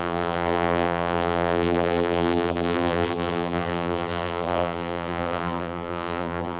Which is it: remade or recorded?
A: remade